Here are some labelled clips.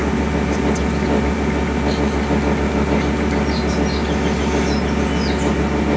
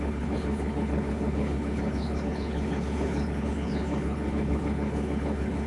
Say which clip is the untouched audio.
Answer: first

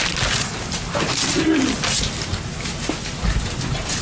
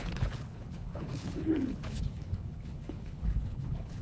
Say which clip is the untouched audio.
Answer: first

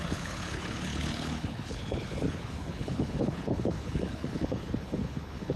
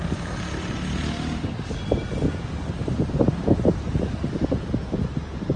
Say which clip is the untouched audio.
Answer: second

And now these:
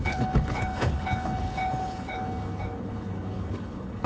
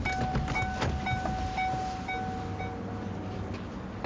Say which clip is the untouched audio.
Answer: second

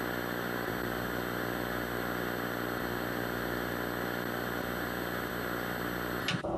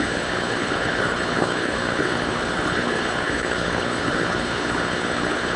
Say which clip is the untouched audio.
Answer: first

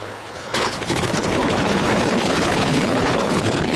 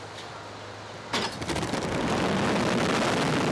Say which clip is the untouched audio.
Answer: second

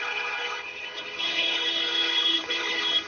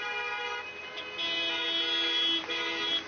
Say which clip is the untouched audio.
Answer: second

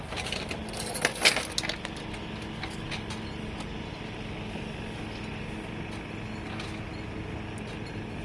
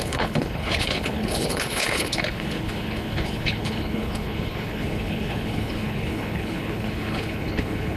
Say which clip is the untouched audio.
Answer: first